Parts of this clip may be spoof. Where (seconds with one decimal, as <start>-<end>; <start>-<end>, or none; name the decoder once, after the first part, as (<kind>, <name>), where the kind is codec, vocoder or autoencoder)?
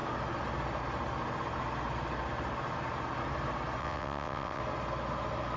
3.8-4.6 (vocoder, WaveNeXt)